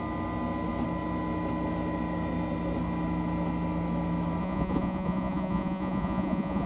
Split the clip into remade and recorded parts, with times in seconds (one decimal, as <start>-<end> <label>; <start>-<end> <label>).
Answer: 0.0-4.4 recorded; 4.4-6.7 remade